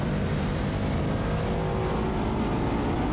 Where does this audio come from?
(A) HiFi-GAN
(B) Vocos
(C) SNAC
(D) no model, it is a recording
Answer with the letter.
D